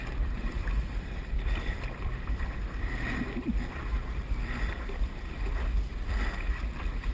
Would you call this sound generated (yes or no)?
yes